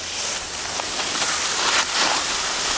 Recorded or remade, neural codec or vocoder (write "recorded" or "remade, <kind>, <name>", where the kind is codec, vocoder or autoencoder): recorded